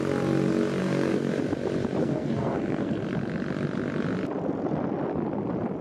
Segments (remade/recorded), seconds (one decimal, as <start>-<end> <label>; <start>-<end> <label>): 0.0-0.8 recorded; 0.8-1.3 remade; 1.3-2.0 recorded; 2.0-3.0 remade; 3.0-5.8 recorded